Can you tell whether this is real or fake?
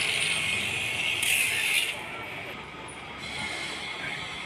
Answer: real